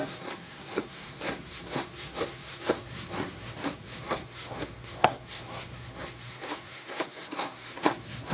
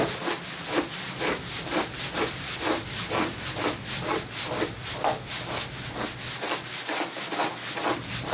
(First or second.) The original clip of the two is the second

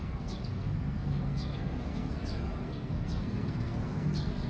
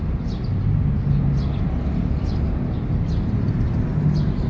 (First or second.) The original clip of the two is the second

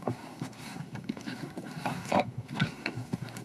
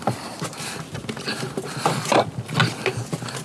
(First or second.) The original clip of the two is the second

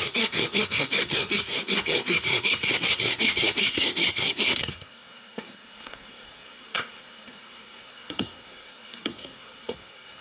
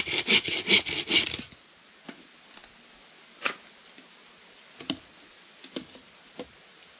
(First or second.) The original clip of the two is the second